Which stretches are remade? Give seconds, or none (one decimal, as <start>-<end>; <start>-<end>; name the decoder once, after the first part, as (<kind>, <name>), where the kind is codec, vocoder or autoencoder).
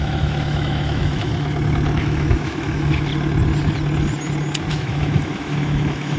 0.0-1.3 (autoencoder, DAC-VAE); 2.0-3.1; 4.7-6.2